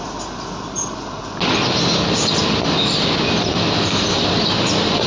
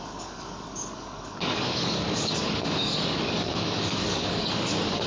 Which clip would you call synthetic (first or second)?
second